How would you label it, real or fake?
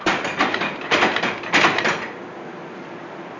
real